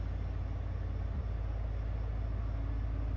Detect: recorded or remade recorded